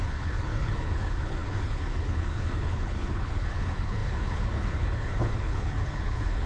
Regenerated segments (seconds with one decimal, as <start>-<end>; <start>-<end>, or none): 0.0-6.5